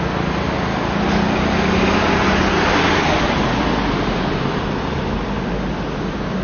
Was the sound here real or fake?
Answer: real